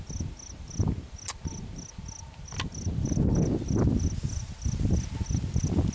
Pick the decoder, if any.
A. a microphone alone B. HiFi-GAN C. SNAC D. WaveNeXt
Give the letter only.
A